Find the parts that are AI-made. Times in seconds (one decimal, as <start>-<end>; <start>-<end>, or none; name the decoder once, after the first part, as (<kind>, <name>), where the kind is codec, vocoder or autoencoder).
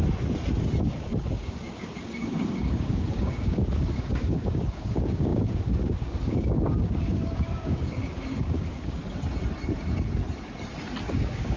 0.8-9.0 (codec, DAC); 11.1-11.6